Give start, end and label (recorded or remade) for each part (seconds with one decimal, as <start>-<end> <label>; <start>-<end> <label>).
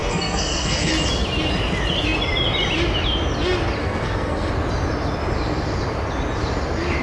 0.0-0.9 remade; 0.9-3.8 recorded; 3.8-4.5 remade; 4.5-7.0 recorded